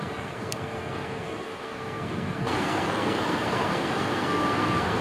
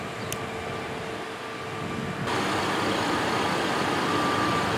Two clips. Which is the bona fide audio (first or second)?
second